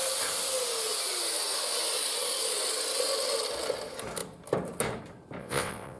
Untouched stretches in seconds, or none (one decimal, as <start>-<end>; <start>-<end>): 0.0-5.4